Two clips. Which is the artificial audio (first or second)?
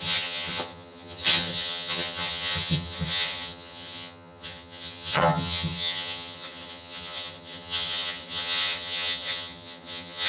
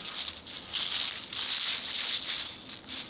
first